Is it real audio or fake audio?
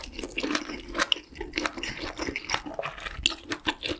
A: real